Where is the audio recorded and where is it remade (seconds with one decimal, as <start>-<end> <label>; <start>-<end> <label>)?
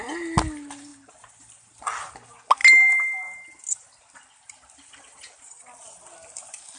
0.0-6.8 recorded